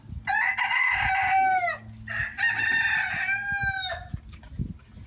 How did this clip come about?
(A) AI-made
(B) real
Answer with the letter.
B